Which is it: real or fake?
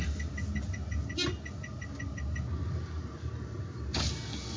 real